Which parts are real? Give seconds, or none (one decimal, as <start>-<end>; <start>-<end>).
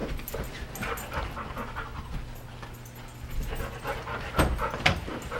0.0-5.4